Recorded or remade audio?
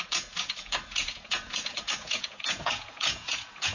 remade